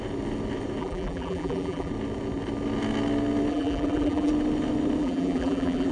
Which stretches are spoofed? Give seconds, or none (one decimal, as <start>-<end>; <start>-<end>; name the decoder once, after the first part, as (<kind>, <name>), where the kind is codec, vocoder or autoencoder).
0.8-1.9 (vocoder, BigVGAN v2); 3.5-4.3; 5.0-5.9

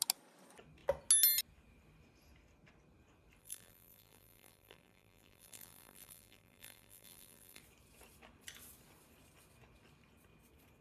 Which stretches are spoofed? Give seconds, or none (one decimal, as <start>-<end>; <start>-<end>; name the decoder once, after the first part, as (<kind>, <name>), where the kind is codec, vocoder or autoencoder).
3.4-7.6 (vocoder, BigVGAN v2)

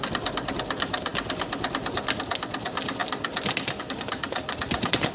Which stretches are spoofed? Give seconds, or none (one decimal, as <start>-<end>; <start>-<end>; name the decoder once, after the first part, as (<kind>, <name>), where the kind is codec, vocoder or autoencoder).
none

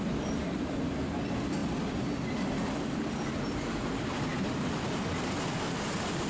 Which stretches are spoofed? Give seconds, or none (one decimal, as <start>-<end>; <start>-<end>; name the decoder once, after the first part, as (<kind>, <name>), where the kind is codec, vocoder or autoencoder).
none

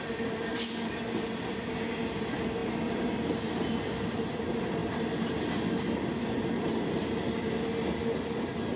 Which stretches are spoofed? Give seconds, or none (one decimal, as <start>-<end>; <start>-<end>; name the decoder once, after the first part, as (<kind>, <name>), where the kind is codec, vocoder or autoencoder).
none

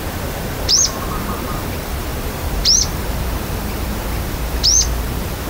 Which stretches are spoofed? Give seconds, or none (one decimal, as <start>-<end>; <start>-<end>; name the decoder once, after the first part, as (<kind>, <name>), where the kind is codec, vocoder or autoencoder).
0.0-5.5 (vocoder, BigVGAN v2)

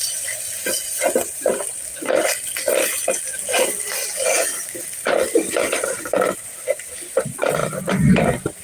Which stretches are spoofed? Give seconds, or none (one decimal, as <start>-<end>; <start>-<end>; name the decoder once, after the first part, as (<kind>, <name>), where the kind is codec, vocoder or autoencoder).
0.0-4.0 (vocoder, BigVGAN v2); 5.5-7.6